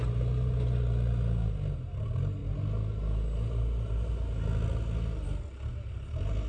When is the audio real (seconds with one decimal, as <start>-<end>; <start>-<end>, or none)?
0.0-6.5